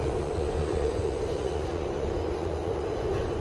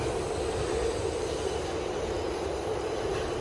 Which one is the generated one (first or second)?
first